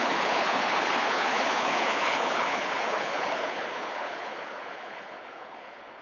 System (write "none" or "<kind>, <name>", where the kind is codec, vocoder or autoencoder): codec, HILCodec